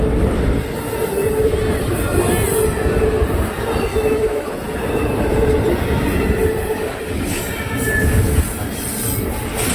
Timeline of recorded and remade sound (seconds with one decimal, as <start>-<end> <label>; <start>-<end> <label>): 0.0-3.9 recorded; 3.9-4.5 remade; 4.5-9.7 recorded